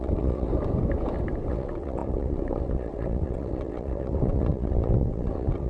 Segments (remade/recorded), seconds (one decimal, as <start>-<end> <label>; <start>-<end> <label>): 0.0-0.5 remade; 0.5-1.5 recorded; 1.5-5.7 remade